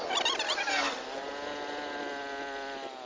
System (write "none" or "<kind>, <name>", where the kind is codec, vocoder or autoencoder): none